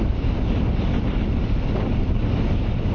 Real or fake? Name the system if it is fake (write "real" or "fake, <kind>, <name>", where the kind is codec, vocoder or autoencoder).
real